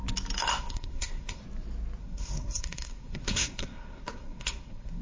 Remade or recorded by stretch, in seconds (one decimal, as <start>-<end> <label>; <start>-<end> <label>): 0.0-0.5 recorded; 0.5-1.4 remade; 1.4-2.0 recorded; 2.0-5.0 remade